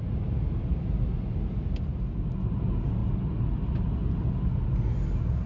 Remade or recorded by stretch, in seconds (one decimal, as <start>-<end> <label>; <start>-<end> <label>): 0.0-5.5 recorded

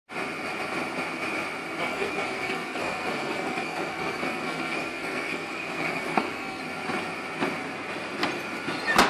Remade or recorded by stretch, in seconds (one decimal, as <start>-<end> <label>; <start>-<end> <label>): 0.0-1.9 recorded; 1.9-6.6 remade; 6.6-9.1 recorded